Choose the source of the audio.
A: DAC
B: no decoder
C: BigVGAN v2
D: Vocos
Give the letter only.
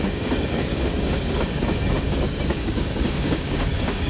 A